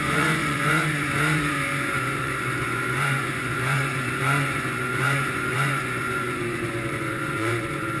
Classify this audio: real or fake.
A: fake